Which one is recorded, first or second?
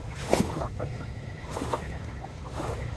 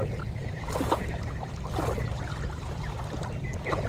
second